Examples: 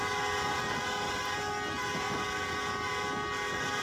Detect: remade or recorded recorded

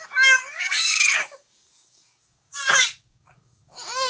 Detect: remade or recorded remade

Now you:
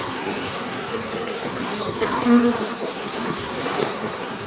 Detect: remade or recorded remade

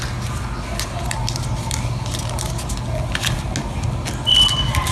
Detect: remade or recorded recorded